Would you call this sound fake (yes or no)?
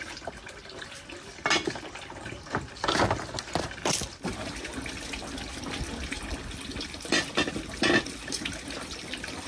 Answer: no